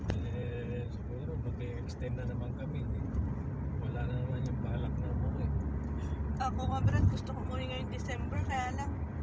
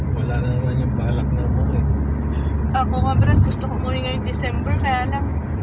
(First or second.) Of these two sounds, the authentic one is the second